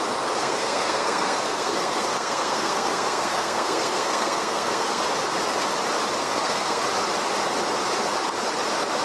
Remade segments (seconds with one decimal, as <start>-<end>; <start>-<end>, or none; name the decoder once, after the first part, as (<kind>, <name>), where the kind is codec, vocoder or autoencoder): 0.4-5.0 (codec, SNAC); 6.2-6.8